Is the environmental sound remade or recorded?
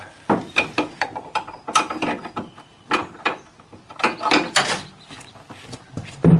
remade